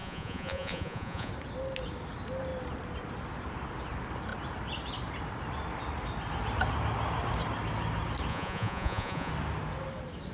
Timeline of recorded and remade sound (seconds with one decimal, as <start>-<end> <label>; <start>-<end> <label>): 0.0-1.3 remade; 1.3-8.3 recorded; 8.3-9.3 remade; 9.3-10.3 recorded